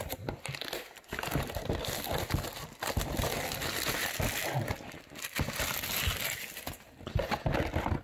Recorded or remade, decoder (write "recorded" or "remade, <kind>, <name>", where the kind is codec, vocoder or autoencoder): recorded